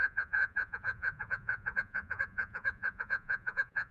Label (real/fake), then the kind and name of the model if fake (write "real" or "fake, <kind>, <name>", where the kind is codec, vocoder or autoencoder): fake, vocoder, Vocos